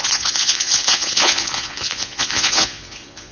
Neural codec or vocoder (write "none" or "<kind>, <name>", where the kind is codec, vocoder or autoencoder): vocoder, Vocos